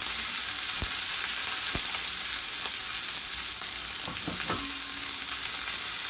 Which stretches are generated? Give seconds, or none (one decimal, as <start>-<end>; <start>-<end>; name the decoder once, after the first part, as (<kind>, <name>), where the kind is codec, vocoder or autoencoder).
4.8-5.4 (codec, DAC)